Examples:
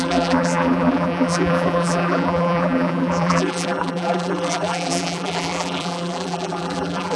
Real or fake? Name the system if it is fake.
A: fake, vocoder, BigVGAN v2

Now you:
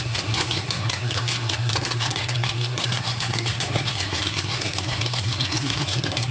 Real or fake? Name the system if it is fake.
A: fake, codec, SNAC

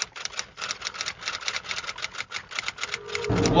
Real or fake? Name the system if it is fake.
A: real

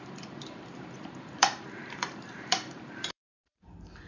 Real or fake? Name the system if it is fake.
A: fake, vocoder, BigVGAN v2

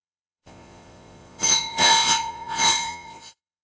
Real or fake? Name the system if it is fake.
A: fake, vocoder, Vocos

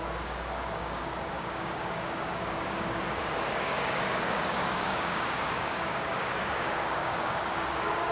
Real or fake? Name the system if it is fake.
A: fake, codec, DAC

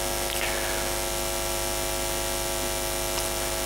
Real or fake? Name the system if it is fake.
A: real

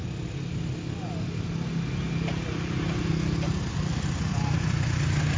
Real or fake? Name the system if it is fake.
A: real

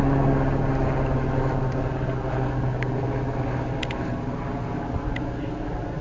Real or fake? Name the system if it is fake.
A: real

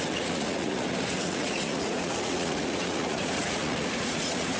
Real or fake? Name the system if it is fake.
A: fake, vocoder, Vocos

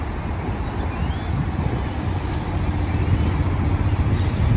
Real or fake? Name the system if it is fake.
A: real